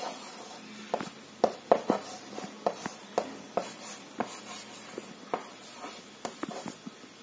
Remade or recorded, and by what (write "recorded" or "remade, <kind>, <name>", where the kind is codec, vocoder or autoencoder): recorded